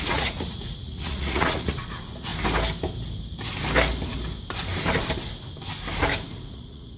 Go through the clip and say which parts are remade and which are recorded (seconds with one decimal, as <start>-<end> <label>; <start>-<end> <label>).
0.0-2.3 remade; 2.3-6.5 recorded; 6.5-7.0 remade

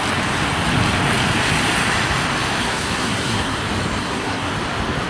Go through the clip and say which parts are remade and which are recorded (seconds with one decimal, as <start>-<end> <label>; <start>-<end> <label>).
0.0-2.6 recorded; 2.6-3.6 remade; 3.6-4.0 recorded; 4.0-4.5 remade; 4.5-5.1 recorded

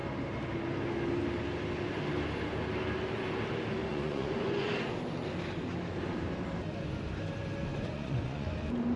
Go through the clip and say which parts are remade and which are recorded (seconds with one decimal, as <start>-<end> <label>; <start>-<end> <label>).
0.0-3.9 recorded; 3.9-4.7 remade; 4.7-7.7 recorded; 7.7-8.5 remade; 8.5-9.0 recorded

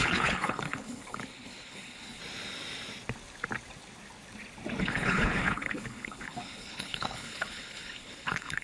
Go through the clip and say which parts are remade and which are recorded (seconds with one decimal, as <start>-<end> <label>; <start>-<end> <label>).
0.0-2.2 remade; 2.2-4.8 recorded; 4.8-8.6 remade